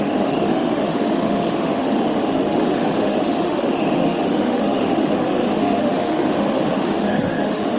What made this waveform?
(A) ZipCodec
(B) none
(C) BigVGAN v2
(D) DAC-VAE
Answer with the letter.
D